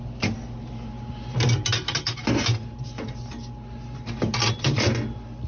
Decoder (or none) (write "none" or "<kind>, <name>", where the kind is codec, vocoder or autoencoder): none